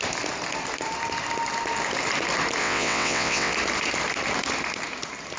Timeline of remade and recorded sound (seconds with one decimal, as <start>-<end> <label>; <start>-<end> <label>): 0.0-2.6 recorded; 2.6-3.5 remade; 3.5-5.4 recorded